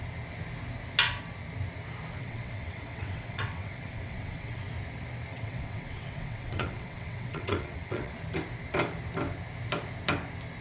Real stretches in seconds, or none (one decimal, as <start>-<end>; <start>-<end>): 0.0-2.2; 4.6-5.3; 8.1-10.6